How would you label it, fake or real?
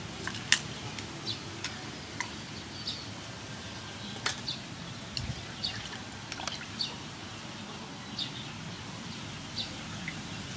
real